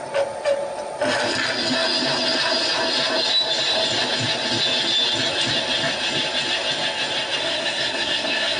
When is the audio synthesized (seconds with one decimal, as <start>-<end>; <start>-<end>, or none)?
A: 7.4-8.6